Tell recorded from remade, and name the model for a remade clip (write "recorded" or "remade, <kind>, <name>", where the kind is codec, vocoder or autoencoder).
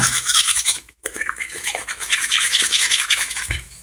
remade, autoencoder, DAC-VAE